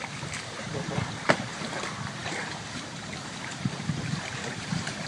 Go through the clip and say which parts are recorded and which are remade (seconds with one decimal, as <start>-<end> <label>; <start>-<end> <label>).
0.0-5.1 remade